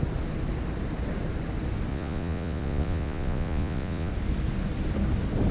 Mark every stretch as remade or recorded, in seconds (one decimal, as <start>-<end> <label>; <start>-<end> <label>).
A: 0.0-1.9 recorded; 1.9-4.1 remade; 4.1-5.5 recorded